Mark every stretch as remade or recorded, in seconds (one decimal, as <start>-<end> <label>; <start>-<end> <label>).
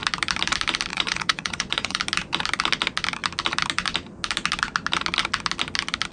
0.0-0.9 recorded; 0.9-2.0 remade; 2.0-6.1 recorded